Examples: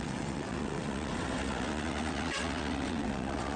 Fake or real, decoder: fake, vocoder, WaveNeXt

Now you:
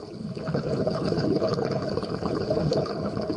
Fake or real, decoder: fake, codec, HILCodec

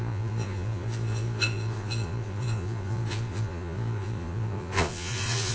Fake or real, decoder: fake, vocoder, Vocos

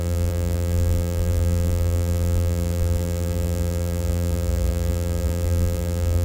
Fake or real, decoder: fake, vocoder, BigVGAN v2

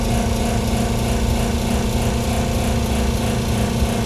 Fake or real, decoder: real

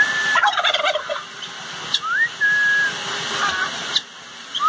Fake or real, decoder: real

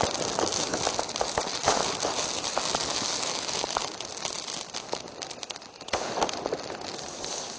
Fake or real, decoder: real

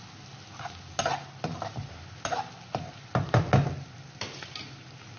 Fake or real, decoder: real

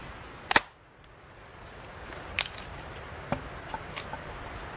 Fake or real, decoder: real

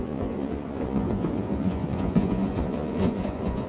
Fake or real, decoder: fake, vocoder, Vocos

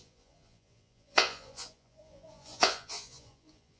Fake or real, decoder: fake, vocoder, Vocos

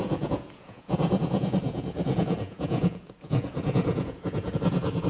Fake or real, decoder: fake, vocoder, Vocos